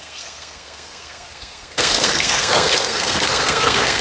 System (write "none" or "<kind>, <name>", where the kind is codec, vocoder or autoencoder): codec, SNAC